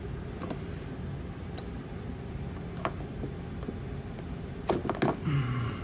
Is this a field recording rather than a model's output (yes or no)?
yes